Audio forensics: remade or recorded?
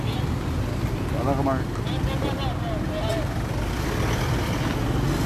recorded